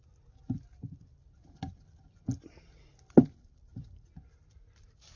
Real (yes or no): yes